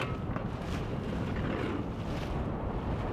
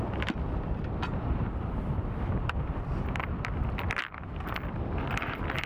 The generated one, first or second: second